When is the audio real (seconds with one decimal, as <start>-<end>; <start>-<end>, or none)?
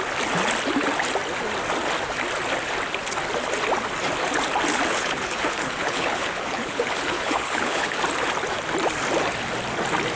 0.0-4.9; 8.0-10.2